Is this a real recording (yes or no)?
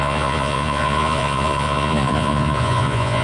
no